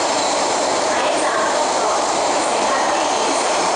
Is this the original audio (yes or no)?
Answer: no